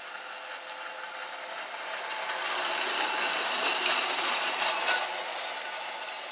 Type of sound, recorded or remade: recorded